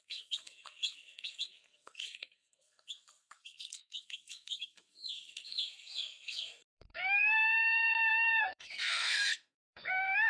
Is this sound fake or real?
fake